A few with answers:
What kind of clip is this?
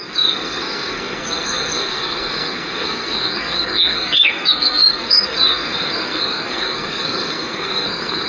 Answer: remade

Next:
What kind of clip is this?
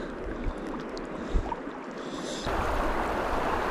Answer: recorded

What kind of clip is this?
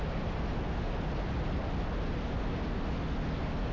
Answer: recorded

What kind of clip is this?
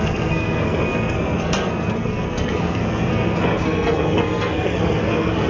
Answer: remade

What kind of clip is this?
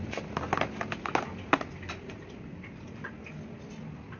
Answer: recorded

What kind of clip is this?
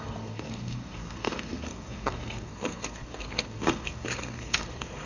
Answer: remade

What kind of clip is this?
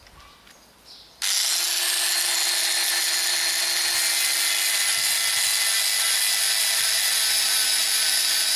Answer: recorded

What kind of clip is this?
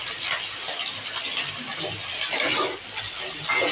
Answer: recorded